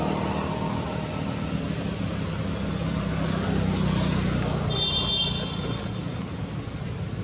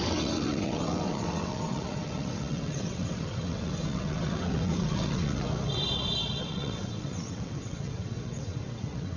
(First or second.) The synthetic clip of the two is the second